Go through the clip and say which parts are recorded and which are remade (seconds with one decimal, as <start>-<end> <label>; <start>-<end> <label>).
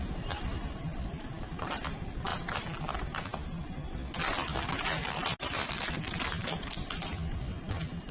0.0-0.7 remade; 0.7-8.1 recorded